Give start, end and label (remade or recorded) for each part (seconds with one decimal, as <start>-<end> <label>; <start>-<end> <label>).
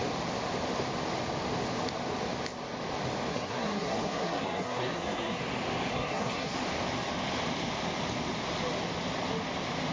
0.0-3.3 recorded; 3.3-5.4 remade; 5.4-5.9 recorded; 5.9-6.6 remade; 6.6-9.9 recorded